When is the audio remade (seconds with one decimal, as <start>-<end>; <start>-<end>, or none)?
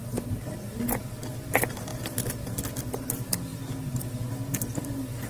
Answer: none